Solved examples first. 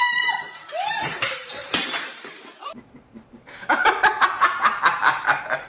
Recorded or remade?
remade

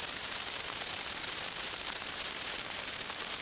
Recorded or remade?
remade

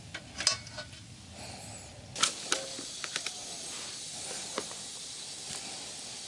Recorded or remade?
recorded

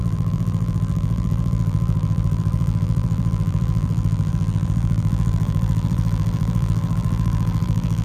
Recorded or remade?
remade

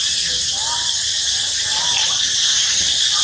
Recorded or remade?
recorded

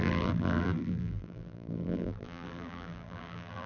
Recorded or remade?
remade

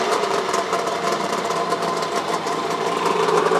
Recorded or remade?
remade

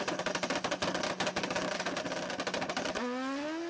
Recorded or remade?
recorded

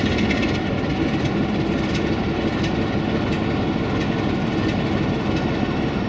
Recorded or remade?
recorded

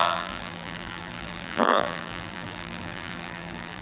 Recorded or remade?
remade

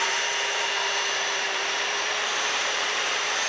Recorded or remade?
remade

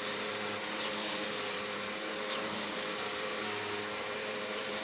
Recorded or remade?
remade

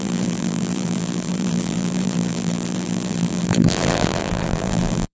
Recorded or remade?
remade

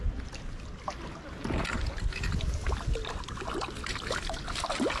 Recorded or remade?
recorded